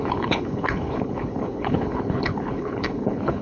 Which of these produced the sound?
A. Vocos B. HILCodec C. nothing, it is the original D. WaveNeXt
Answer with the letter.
B